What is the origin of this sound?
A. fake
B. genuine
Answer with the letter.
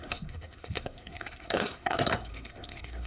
A